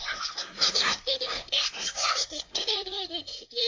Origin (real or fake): fake